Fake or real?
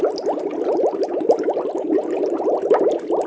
real